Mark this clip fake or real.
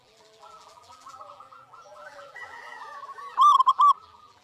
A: fake